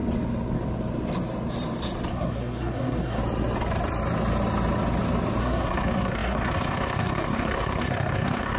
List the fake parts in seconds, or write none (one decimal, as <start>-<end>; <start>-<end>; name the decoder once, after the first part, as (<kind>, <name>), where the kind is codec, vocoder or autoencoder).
2.1-3.2 (codec, SNAC); 5.4-8.6